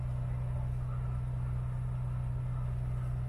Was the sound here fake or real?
real